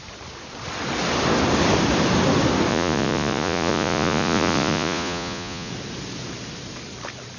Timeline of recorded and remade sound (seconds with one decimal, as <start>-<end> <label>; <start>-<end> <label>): 0.0-2.7 recorded; 2.7-5.7 remade; 5.7-7.4 recorded